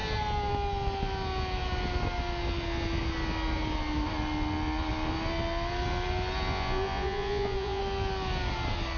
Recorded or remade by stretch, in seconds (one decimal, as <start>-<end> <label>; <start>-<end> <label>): 0.0-6.5 recorded; 6.5-7.8 remade; 7.8-9.0 recorded